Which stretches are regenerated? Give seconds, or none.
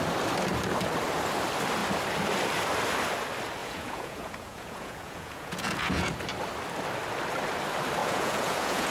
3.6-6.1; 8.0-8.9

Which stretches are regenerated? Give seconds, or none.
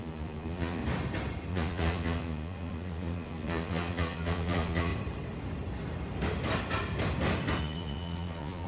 0.0-0.8; 1.5-4.9; 7.6-8.7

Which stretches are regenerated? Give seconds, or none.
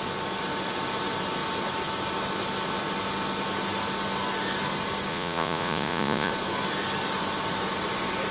5.1-6.3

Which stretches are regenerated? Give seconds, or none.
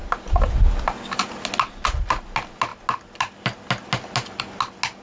none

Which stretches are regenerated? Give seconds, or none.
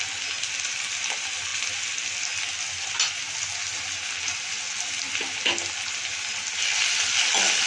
none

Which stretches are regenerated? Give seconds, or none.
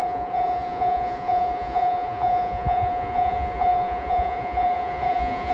0.0-5.5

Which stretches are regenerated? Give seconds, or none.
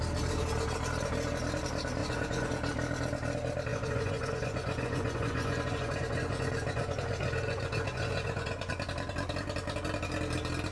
2.0-2.5; 3.7-8.7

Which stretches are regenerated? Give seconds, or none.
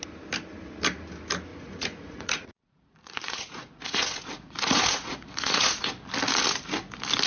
1.5-5.9